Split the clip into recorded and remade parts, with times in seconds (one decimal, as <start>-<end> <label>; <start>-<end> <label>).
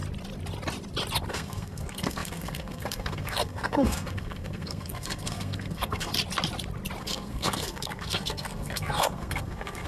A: 0.0-1.3 recorded; 1.3-6.1 remade; 6.1-7.0 recorded; 7.0-9.9 remade